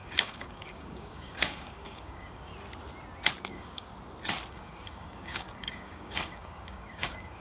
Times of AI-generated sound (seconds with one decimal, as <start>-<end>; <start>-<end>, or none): 0.0-2.5; 3.5-3.9; 4.5-7.4